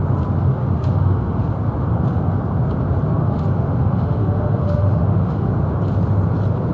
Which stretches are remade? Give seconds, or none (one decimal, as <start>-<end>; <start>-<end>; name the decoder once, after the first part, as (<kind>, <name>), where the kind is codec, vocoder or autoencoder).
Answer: 0.6-1.5 (autoencoder, DAC-VAE); 3.2-5.5